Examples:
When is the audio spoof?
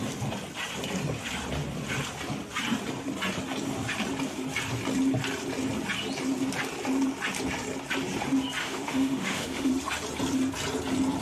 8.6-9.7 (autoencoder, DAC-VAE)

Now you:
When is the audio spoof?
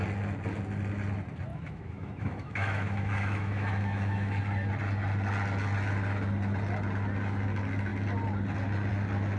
1.5-4.4 (autoencoder, DAC-VAE)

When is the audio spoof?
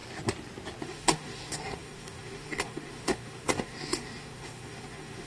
0.8-5.3 (autoencoder, DAC-VAE)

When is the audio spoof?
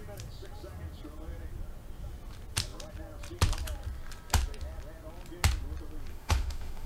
6.1-6.9 (autoencoder, DAC-VAE)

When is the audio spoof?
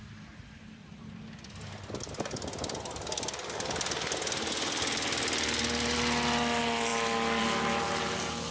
none